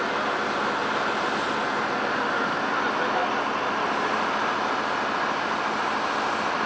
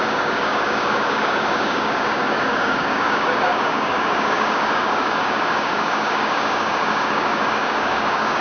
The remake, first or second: second